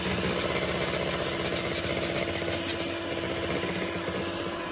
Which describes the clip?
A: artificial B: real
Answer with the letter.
B